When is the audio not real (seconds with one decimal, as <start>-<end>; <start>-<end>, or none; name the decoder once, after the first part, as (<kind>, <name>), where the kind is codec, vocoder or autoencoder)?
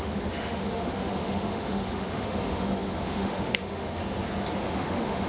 0.0-4.0 (autoencoder, DAC-VAE); 4.6-5.3